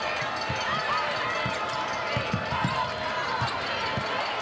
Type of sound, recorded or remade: recorded